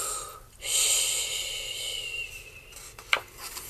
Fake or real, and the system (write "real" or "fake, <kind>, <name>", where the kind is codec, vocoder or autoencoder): real